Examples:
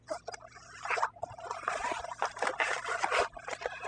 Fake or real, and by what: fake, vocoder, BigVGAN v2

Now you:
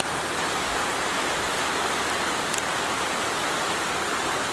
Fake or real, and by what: real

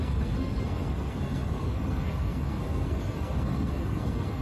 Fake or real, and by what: fake, codec, SNAC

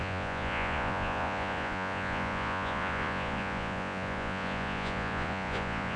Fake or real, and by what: fake, vocoder, Vocos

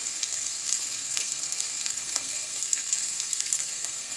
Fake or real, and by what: fake, codec, SNAC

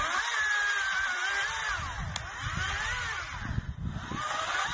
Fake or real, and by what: real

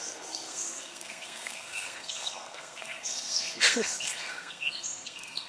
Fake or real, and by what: fake, codec, SNAC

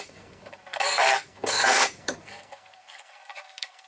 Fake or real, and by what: fake, codec, SNAC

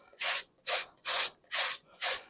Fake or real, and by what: fake, vocoder, Vocos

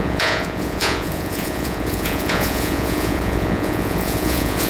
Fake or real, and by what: fake, vocoder, Vocos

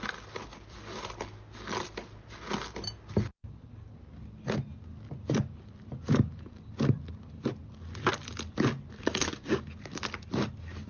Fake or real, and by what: real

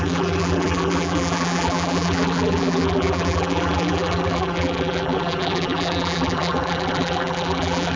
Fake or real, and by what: fake, vocoder, BigVGAN v2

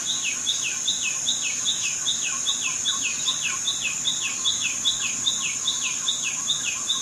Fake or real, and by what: real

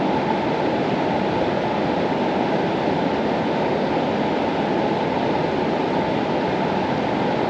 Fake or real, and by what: real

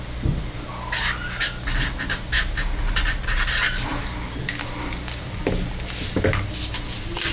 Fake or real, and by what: real